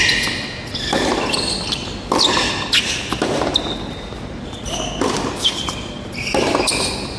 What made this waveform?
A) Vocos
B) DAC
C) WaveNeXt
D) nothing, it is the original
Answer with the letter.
D